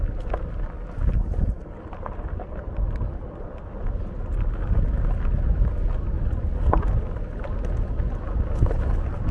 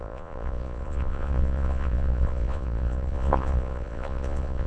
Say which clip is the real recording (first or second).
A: first